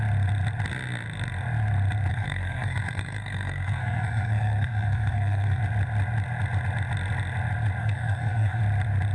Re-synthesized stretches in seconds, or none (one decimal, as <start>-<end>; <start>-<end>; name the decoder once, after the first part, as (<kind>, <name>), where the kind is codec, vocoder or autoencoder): 2.1-5.6 (codec, SNAC); 7.8-8.6